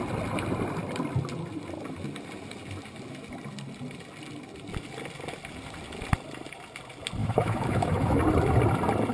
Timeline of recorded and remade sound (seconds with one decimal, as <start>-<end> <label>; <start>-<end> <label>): 0.0-7.2 recorded; 7.2-8.2 remade; 8.2-9.1 recorded